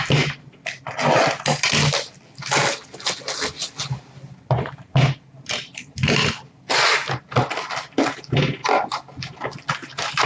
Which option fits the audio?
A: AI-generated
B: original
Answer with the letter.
B